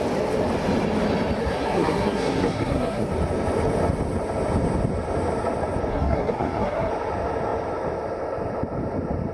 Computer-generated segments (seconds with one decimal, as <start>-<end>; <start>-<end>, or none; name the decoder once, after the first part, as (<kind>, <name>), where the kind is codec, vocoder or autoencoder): 1.4-3.1 (codec, SNAC); 5.9-6.9

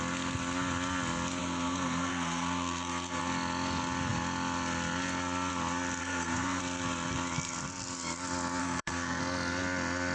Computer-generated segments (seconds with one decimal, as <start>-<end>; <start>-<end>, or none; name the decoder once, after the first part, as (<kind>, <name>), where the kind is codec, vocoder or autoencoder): 1.4-3.2 (codec, SNAC); 6.0-6.6; 8.6-9.2